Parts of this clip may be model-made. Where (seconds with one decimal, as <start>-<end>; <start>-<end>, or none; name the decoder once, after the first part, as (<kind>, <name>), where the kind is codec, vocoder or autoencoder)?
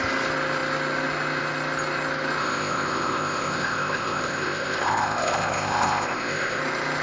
2.4-6.6 (codec, ZipCodec)